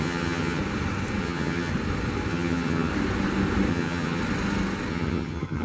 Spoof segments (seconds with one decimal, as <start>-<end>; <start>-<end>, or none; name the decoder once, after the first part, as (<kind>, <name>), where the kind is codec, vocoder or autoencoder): 0.0-0.6 (vocoder, HiFi-GAN); 1.2-1.7; 2.3-2.9; 3.7-4.2; 4.9-5.6